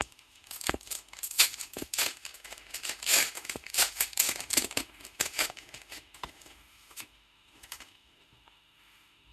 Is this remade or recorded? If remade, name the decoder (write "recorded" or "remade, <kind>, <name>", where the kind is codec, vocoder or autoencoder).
remade, autoencoder, DAC-VAE